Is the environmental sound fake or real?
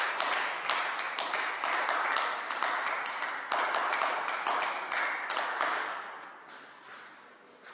real